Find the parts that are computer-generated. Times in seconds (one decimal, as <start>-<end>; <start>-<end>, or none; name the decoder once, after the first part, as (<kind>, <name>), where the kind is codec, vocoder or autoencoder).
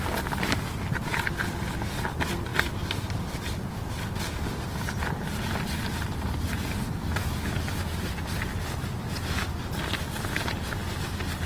none